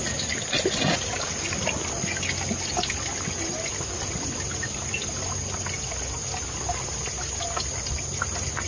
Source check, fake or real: real